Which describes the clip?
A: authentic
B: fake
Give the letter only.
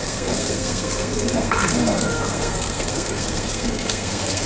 B